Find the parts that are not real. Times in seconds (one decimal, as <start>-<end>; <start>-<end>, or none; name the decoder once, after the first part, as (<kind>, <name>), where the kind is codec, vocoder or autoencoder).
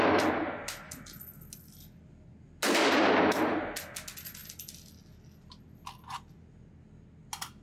none